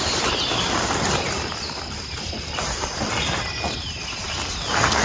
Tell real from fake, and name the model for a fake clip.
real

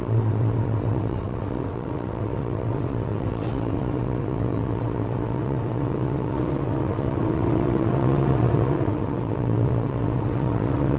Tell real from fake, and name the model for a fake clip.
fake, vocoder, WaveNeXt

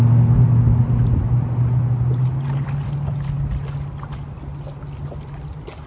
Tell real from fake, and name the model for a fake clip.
real